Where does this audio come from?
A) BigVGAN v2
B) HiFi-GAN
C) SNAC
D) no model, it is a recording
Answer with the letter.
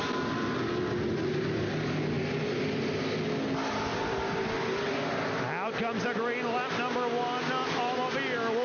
D